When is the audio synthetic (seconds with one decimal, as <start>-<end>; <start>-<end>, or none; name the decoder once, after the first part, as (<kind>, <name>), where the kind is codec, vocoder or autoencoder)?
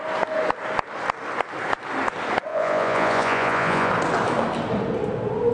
2.5-3.9 (vocoder, Vocos)